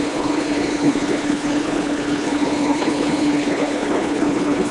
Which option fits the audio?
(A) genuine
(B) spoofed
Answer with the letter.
B